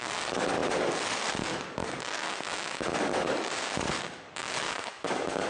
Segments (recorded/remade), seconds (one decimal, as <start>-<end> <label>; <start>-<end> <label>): 0.0-5.5 remade